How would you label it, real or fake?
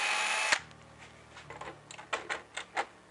real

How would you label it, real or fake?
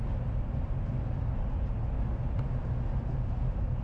real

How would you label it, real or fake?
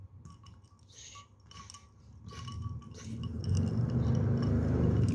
real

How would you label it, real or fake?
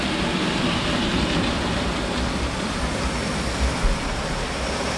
real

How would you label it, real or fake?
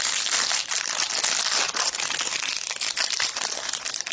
real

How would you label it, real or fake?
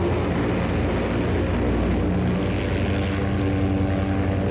real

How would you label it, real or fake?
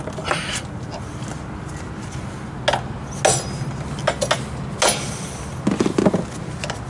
real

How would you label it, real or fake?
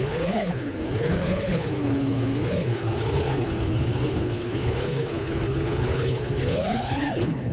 fake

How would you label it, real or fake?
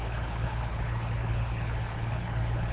fake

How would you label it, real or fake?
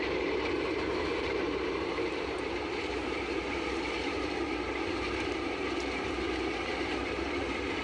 fake